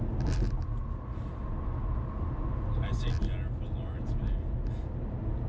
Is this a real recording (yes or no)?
yes